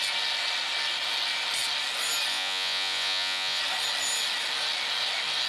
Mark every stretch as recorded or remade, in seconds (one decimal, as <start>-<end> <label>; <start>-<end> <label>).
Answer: 0.0-2.3 recorded; 2.3-3.6 remade; 3.6-5.5 recorded